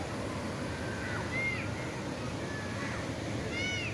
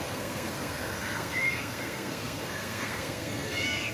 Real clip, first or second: first